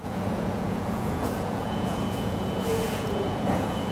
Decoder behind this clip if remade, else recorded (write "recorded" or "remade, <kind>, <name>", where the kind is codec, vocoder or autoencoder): remade, vocoder, Vocos